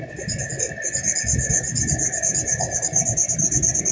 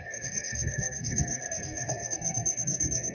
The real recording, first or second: first